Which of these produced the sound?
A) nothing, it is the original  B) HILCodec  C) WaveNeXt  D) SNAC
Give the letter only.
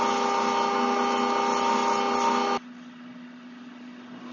A